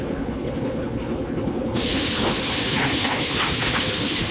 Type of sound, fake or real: fake